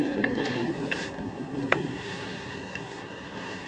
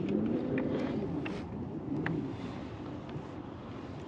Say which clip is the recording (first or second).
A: second